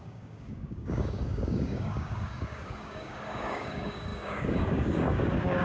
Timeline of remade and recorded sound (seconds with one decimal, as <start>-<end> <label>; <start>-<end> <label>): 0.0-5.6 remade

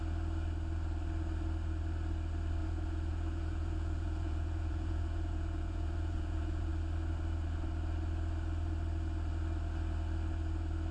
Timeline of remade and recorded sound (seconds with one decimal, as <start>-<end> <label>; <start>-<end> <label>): 0.0-2.6 recorded; 2.6-6.7 remade; 6.7-10.9 recorded

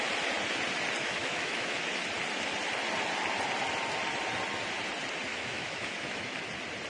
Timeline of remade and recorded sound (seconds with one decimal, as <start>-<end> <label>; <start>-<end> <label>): 0.0-1.0 recorded; 1.0-1.9 remade; 1.9-5.3 recorded; 5.3-6.4 remade; 6.4-6.9 recorded